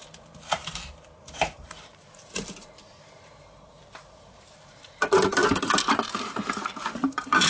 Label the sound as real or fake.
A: fake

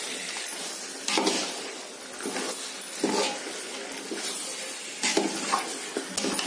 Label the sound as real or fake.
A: real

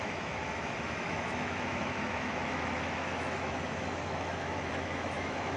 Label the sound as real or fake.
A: fake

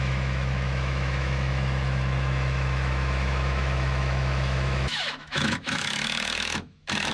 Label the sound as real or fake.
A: fake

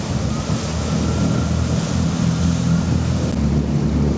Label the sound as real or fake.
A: real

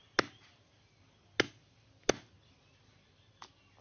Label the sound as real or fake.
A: real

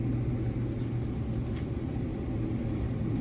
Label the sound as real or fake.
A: real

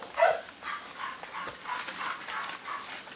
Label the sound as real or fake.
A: real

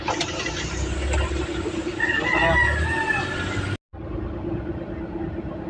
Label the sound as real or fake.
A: real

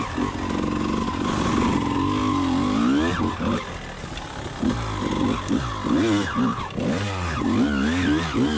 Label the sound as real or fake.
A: real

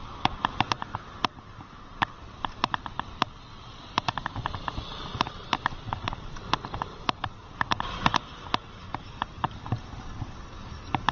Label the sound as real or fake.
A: real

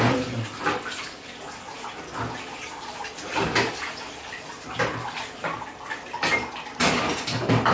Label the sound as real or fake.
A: real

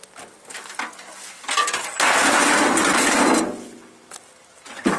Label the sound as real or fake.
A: real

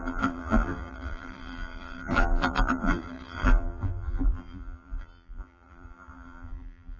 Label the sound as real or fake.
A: fake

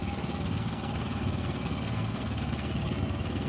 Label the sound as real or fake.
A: fake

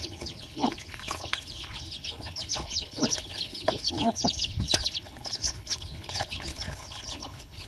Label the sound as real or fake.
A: fake